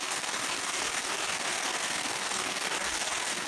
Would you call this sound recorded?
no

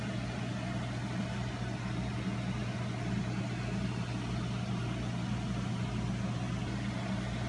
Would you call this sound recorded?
yes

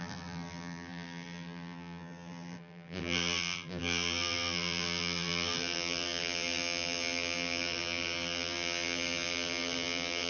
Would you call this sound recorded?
no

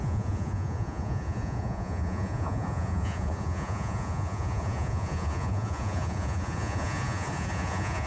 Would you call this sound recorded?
no